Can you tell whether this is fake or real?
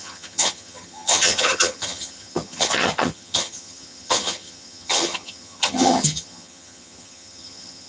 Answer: fake